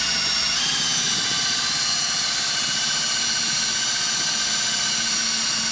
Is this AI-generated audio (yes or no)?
no